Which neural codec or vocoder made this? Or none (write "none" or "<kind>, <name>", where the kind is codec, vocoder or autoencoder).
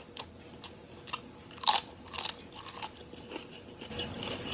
none